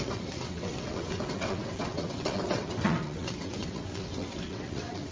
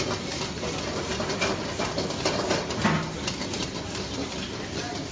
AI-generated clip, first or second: first